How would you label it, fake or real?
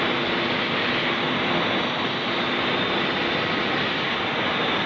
real